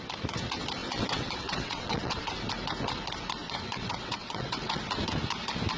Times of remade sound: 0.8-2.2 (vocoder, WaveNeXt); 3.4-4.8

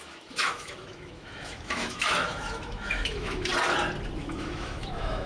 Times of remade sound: 0.0-3.5 (autoencoder, DAC-VAE); 4.2-5.3

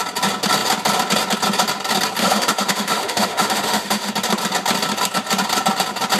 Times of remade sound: 2.2-4.1 (autoencoder, DAC-VAE)

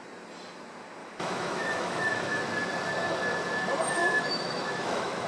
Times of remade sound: 1.0-2.4 (autoencoder, DAC-VAE); 4.0-5.3

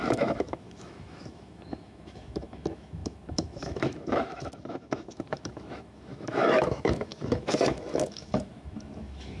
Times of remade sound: 0.0-9.4 (autoencoder, DAC-VAE)

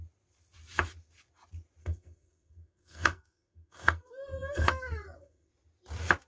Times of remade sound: 1.8-5.5 (codec, SNAC)

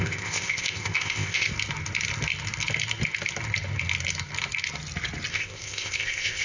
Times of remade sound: 0.0-1.5 (codec, ZipCodec); 5.3-6.4